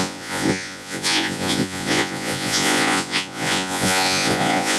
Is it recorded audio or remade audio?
remade